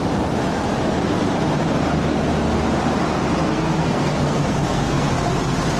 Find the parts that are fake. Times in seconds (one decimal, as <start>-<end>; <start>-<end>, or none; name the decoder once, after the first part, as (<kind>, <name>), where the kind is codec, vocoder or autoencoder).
3.4-5.1 (codec, SNAC)